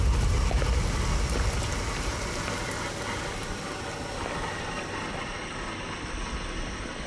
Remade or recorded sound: recorded